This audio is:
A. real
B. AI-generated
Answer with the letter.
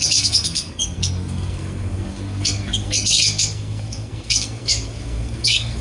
B